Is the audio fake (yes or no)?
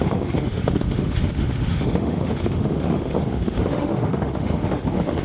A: yes